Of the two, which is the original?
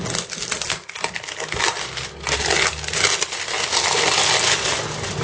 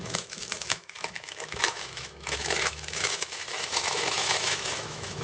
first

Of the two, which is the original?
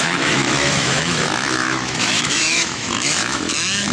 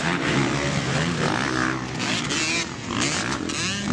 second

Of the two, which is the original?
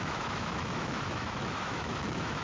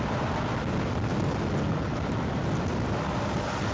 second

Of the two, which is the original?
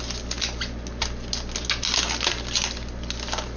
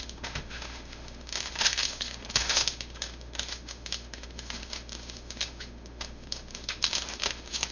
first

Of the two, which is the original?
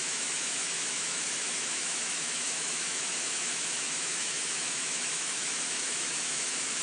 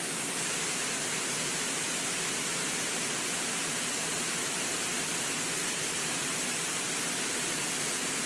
second